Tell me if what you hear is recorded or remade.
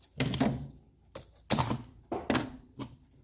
recorded